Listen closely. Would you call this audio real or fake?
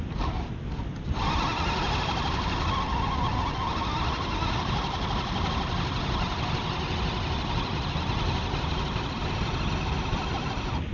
real